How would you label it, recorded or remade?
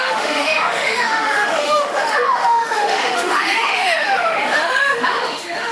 remade